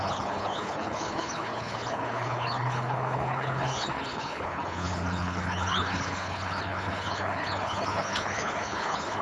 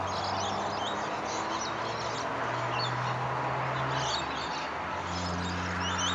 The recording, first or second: second